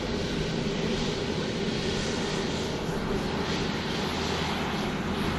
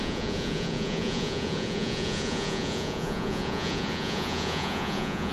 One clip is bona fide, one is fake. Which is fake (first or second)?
second